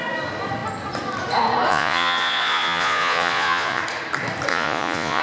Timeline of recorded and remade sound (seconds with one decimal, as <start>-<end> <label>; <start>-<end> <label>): 0.0-1.7 recorded; 1.7-3.8 remade; 3.8-4.5 recorded; 4.5-5.2 remade